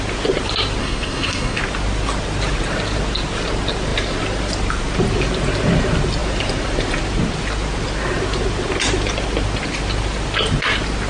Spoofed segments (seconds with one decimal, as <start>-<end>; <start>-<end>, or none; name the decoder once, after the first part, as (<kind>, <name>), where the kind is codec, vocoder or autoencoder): 0.8-1.6 (codec, SNAC)